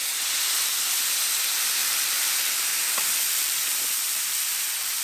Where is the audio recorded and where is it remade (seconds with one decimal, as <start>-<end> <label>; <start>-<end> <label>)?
0.0-1.8 recorded; 1.8-5.0 remade